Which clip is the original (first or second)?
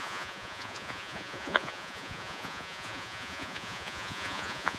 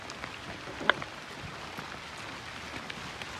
second